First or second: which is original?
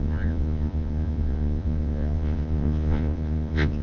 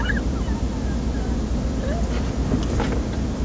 second